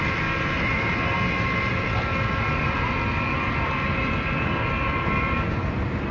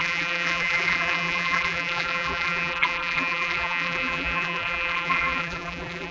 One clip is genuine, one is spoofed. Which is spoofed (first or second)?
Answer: second